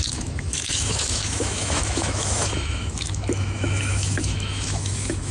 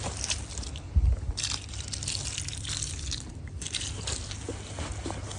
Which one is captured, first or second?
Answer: second